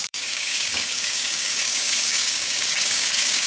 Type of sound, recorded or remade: remade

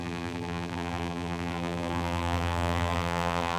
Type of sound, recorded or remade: remade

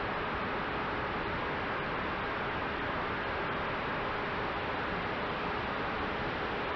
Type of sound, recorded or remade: remade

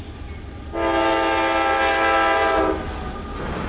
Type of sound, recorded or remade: recorded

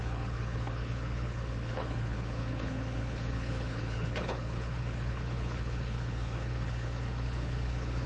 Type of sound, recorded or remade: remade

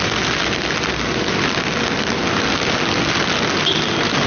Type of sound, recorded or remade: recorded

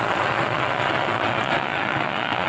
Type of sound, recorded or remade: remade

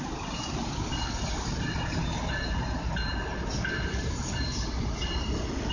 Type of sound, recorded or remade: recorded